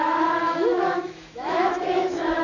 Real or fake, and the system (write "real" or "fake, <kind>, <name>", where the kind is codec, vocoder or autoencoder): fake, autoencoder, DAC-VAE